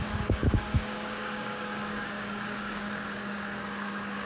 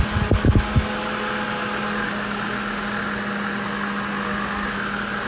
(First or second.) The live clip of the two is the second